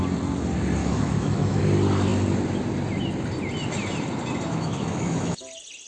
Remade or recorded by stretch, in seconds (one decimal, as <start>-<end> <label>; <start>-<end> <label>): 0.0-0.8 recorded; 0.8-1.6 remade; 1.6-4.5 recorded; 4.5-5.4 remade; 5.4-5.9 recorded